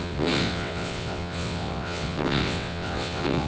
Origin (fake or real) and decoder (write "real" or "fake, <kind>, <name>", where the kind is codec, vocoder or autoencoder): fake, vocoder, WaveNeXt